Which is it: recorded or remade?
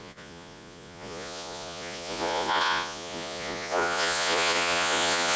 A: remade